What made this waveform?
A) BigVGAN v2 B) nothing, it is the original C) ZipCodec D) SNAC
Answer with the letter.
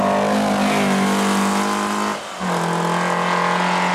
B